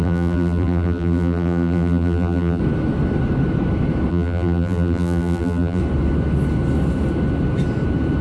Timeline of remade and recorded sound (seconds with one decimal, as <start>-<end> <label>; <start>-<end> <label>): 0.0-2.6 remade; 2.6-4.1 recorded; 4.1-5.8 remade; 5.8-8.2 recorded